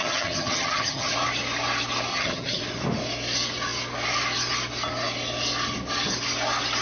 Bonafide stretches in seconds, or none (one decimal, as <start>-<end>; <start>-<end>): 1.1-2.1; 2.6-6.8